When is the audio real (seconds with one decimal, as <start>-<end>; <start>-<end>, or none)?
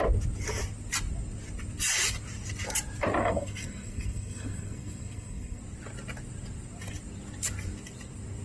0.0-3.2; 5.6-8.4